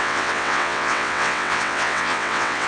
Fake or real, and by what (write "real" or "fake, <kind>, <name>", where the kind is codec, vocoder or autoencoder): fake, vocoder, WaveNeXt